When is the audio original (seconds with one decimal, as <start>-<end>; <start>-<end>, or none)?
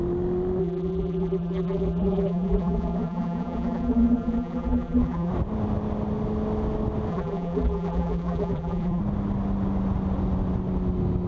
0.0-0.6; 5.3-7.1; 9.0-11.3